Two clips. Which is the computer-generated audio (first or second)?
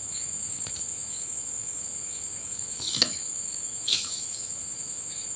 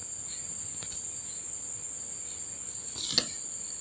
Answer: first